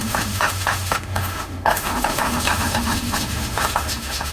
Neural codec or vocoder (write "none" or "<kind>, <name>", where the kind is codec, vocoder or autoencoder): autoencoder, DAC-VAE